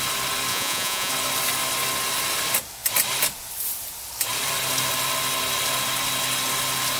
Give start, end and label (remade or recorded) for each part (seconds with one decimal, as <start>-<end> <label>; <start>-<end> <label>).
0.0-0.5 recorded; 0.5-1.1 remade; 1.1-7.0 recorded